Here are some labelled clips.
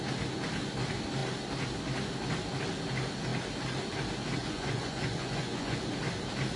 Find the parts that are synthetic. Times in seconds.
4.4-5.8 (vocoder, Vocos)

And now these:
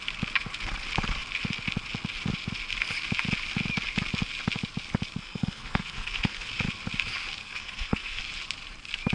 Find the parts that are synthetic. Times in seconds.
5.2-6.5 (codec, SNAC); 7.4-8.2

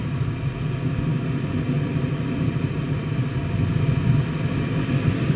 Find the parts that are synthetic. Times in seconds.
none

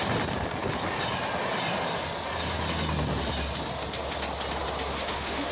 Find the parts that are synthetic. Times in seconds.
5.0-5.5 (autoencoder, DAC-VAE)

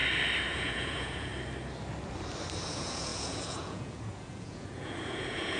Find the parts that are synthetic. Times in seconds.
0.5-1.3 (vocoder, Vocos); 2.7-5.6

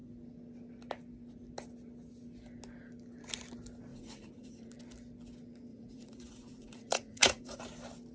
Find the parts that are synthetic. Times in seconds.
3.9-4.7 (vocoder, Vocos); 5.7-7.6